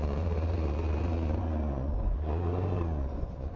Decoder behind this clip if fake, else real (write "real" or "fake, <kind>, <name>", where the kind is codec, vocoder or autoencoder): fake, vocoder, Vocos